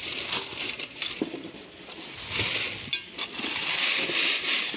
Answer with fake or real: real